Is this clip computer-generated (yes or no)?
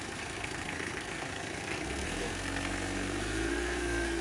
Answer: yes